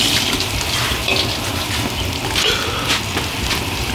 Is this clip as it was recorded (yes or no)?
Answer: yes